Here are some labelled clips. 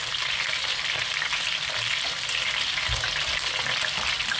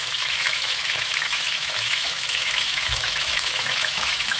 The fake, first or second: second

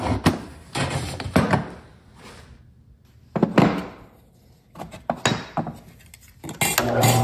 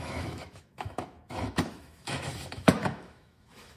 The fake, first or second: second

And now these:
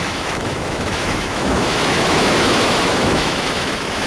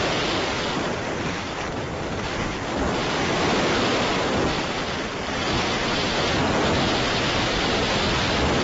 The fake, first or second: first